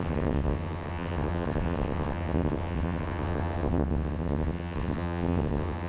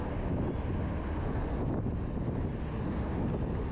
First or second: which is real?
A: second